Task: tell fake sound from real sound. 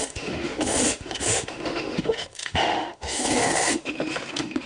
fake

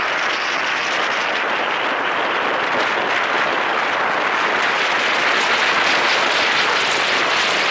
real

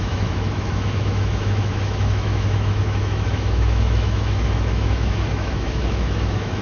fake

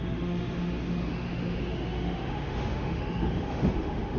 fake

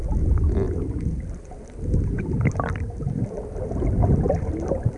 real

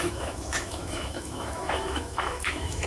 fake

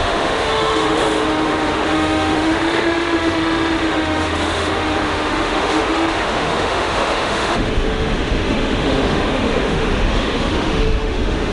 fake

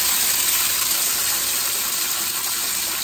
real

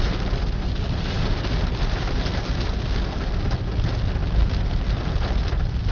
real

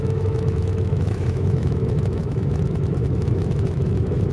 fake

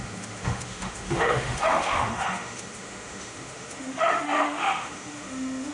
fake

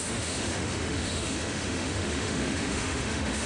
fake